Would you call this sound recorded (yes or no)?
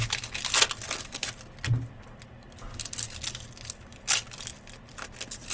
yes